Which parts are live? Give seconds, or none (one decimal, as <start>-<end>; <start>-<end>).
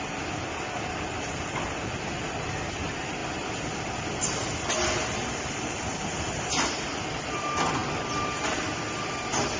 0.0-9.6